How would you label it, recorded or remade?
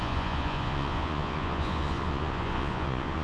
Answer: remade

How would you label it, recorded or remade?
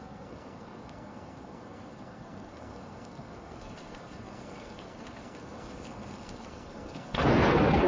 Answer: remade